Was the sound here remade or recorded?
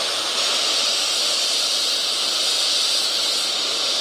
recorded